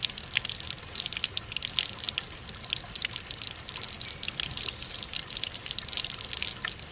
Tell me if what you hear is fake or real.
real